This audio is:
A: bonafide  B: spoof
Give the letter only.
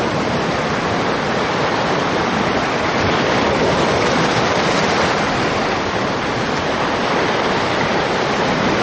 A